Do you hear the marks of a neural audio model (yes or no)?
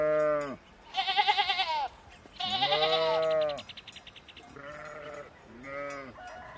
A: no